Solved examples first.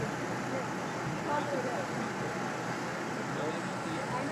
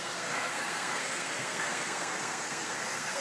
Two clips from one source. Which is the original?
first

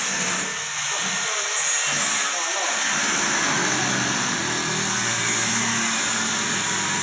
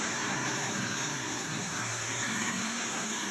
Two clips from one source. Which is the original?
first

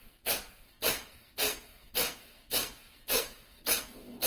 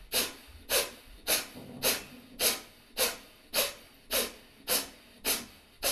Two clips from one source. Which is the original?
second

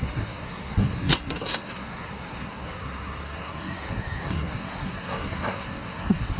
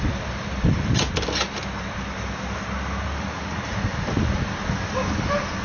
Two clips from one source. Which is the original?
second